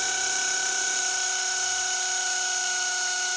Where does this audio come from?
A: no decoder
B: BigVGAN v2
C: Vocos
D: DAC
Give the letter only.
A